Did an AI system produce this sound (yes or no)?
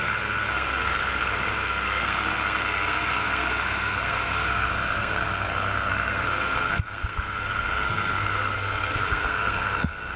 yes